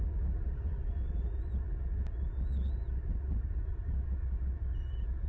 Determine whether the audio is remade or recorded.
recorded